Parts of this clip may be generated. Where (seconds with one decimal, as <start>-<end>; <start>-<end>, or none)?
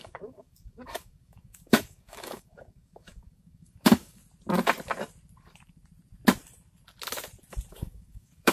0.0-4.2; 7.7-8.5